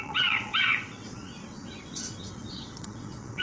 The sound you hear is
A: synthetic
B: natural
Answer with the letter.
A